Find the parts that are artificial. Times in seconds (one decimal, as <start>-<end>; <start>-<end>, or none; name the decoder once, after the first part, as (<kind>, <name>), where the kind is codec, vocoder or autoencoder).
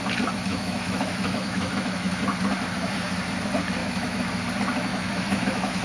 0.5-2.2 (autoencoder, DAC-VAE); 3.8-4.3; 4.9-5.8